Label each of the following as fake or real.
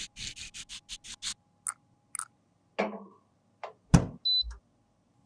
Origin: real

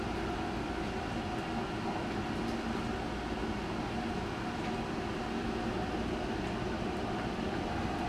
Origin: real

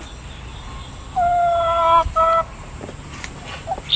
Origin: real